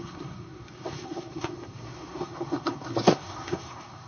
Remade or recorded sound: remade